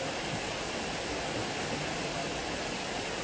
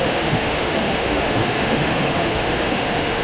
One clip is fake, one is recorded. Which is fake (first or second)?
second